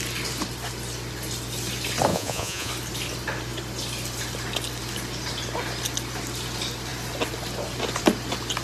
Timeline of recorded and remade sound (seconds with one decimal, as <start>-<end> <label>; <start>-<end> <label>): 0.0-2.1 recorded; 2.1-2.7 remade; 2.7-8.6 recorded